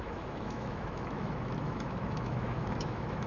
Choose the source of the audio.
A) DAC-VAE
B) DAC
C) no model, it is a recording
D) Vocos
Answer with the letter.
A